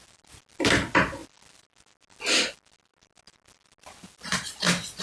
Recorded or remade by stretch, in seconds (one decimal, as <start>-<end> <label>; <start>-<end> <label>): 0.0-5.0 recorded